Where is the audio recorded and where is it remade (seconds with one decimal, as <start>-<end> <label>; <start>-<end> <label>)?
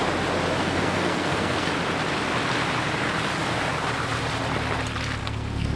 0.0-0.6 recorded; 0.6-1.7 remade; 1.7-5.2 recorded; 5.2-5.8 remade